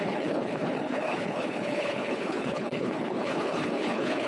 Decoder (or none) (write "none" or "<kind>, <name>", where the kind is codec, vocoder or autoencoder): codec, HILCodec